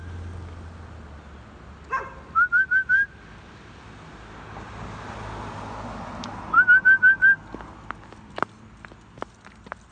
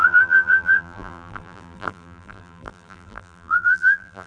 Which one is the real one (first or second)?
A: first